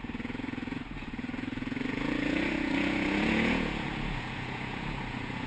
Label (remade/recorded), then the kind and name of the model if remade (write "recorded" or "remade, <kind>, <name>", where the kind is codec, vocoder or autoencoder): remade, vocoder, Vocos